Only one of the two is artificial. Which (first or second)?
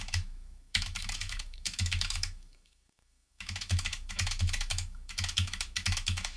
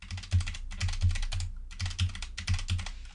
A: first